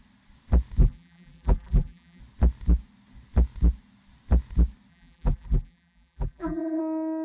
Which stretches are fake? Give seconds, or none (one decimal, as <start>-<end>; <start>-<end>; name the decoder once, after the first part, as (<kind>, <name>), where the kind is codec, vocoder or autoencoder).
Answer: 0.8-2.2 (vocoder, BigVGAN v2); 4.9-6.8